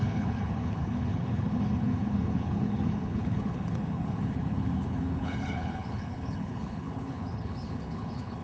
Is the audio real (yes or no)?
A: no